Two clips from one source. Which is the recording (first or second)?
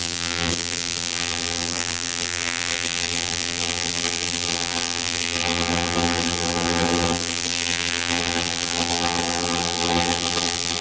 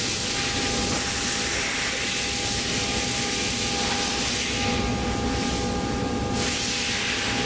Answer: second